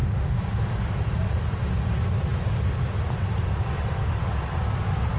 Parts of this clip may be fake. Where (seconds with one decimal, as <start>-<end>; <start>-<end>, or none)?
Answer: none